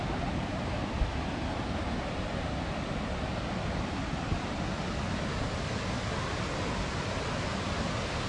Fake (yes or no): no